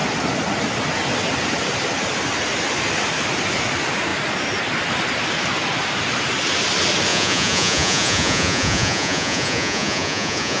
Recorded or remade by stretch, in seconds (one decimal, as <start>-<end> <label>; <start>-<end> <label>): 0.0-7.1 recorded; 7.1-10.6 remade